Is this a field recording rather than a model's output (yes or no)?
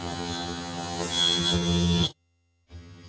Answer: no